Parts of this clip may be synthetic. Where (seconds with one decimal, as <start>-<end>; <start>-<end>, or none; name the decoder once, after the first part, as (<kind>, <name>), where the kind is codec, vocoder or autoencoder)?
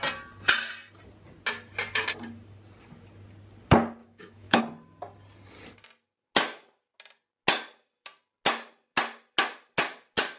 4.0-4.6 (autoencoder, DAC-VAE)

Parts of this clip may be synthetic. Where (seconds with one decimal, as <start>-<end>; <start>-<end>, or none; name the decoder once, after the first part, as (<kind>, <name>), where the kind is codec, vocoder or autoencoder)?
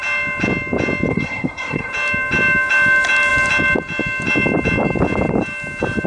1.1-1.9 (codec, SNAC)